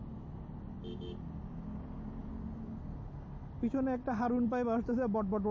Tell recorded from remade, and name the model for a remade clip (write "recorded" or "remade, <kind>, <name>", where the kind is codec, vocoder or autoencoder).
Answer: recorded